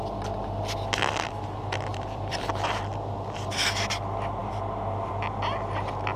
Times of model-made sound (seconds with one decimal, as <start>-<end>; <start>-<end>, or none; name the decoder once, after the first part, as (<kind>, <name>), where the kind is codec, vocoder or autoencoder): 1.9-2.5 (vocoder, BigVGAN v2)

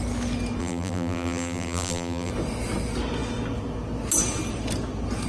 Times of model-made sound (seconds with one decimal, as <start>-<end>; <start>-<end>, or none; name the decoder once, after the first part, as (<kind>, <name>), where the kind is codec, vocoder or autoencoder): 0.6-2.3 (vocoder, BigVGAN v2)

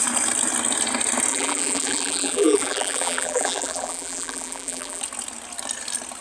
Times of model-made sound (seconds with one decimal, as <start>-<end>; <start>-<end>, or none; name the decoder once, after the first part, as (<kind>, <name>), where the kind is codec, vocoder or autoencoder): 1.3-5.0 (vocoder, BigVGAN v2)

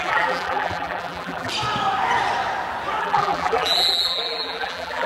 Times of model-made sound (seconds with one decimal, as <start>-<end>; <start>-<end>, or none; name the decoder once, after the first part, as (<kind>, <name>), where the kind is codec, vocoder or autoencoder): 0.0-1.5 (vocoder, BigVGAN v2); 3.0-5.1

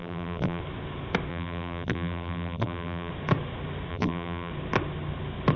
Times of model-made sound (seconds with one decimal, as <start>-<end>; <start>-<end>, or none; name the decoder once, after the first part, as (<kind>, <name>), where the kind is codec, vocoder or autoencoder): 0.0-0.6 (vocoder, BigVGAN v2); 1.3-3.1; 3.9-4.5

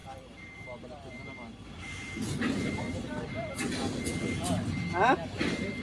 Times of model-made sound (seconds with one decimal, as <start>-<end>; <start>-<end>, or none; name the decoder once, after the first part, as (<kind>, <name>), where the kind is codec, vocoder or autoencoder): 0.0-3.5 (vocoder, BigVGAN v2)

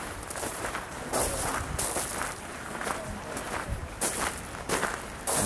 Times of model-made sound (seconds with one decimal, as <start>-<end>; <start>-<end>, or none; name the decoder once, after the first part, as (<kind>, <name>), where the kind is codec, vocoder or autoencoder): 0.0-1.5 (vocoder, BigVGAN v2); 2.4-3.8

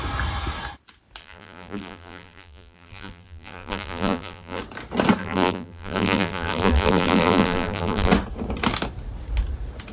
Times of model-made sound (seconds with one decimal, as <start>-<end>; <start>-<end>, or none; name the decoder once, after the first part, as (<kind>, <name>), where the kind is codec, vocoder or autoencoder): 1.2-4.6 (vocoder, BigVGAN v2); 5.2-8.1